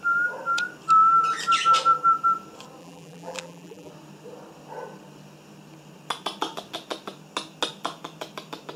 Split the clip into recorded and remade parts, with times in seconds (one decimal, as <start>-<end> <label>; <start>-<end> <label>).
0.0-2.8 recorded; 2.8-3.9 remade; 3.9-8.8 recorded